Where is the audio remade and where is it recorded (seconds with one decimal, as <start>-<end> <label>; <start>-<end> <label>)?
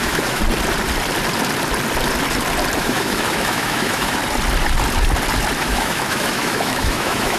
0.0-0.4 remade; 0.4-2.8 recorded; 2.8-4.2 remade; 4.2-5.6 recorded; 5.6-7.4 remade